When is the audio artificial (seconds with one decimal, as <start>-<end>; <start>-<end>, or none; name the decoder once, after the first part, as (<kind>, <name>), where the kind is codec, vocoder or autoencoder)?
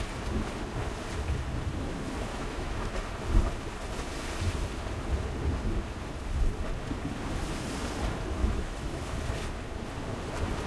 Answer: 2.3-2.9 (autoencoder, DAC-VAE); 8.4-9.0